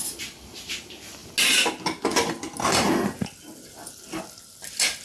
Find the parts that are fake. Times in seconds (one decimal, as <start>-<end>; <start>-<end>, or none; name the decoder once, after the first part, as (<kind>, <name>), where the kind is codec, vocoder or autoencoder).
none